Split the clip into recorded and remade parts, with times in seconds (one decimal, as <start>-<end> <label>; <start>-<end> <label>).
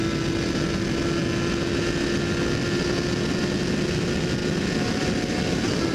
0.0-4.4 recorded; 4.4-5.9 remade